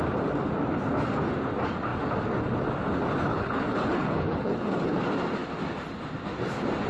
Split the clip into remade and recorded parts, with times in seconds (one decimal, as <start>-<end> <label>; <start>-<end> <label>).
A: 0.0-3.3 recorded; 3.3-5.0 remade; 5.0-6.9 recorded